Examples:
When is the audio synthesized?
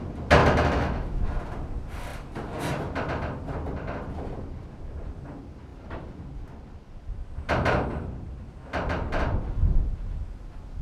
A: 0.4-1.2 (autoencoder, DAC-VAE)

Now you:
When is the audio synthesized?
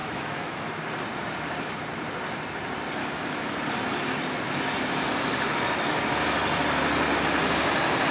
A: 0.0-0.8 (autoencoder, DAC-VAE); 3.0-3.6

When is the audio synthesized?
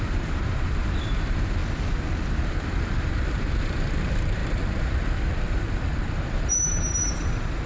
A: 0.0-1.6 (vocoder, BigVGAN v2); 2.4-7.7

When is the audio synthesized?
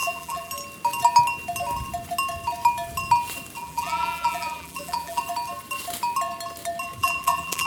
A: 0.0-0.5 (vocoder, BigVGAN v2); 3.6-5.2; 7.0-7.7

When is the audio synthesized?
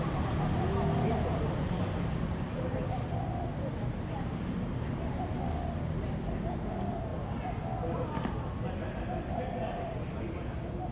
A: none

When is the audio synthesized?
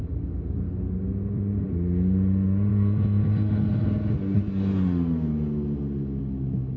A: none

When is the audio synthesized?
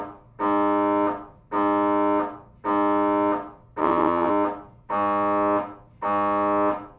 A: 3.8-4.3 (vocoder, WaveNeXt)